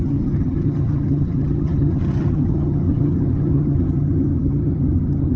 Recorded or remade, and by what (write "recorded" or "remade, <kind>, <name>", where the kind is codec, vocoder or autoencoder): remade, vocoder, HiFi-GAN